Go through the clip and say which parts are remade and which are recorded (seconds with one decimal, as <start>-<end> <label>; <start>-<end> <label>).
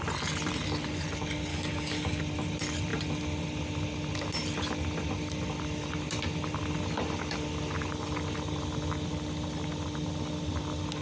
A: 0.0-1.5 recorded; 1.5-2.2 remade; 2.2-11.0 recorded